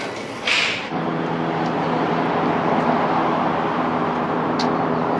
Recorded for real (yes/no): yes